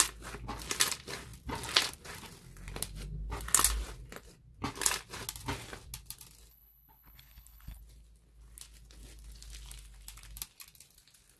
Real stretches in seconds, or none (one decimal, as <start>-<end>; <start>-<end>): 0.0-6.5; 7.8-11.4

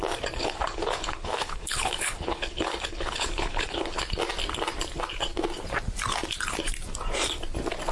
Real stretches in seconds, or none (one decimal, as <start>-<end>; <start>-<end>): 0.0-0.4; 4.0-7.9

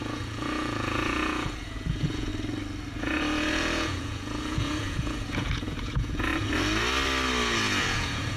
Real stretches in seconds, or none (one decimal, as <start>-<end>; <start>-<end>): 2.3-3.0; 6.3-7.8